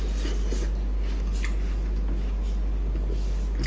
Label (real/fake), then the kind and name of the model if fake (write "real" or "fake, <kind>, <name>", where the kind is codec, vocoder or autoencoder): real